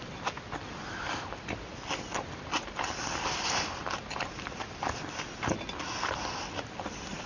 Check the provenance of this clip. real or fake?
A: real